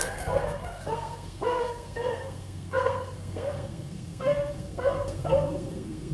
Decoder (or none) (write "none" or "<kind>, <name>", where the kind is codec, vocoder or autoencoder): codec, SNAC